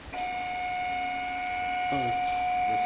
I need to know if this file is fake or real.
real